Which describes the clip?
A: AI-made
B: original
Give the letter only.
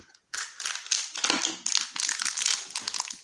B